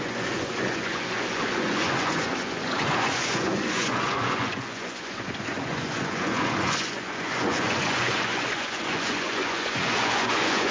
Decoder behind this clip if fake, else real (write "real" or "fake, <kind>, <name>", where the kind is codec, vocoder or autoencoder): fake, vocoder, Vocos